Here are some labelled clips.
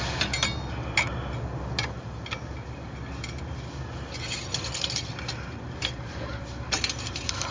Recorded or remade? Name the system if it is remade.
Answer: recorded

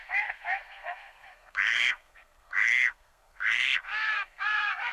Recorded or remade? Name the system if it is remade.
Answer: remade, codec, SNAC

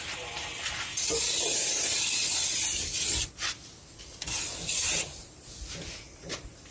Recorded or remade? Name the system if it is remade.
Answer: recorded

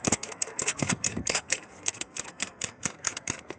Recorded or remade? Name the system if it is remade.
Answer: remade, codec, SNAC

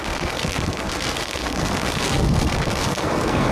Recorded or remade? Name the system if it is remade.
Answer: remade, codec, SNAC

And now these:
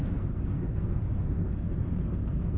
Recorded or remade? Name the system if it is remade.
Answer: remade, codec, SNAC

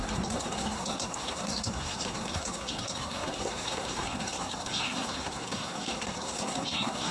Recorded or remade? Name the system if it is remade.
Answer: remade, codec, SNAC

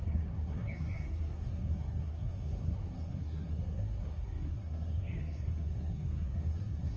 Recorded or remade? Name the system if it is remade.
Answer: remade, codec, SNAC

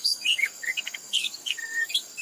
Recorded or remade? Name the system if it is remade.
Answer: remade, codec, SNAC